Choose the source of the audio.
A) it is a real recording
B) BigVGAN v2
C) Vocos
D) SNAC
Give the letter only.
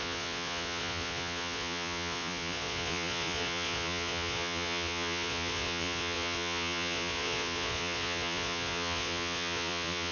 C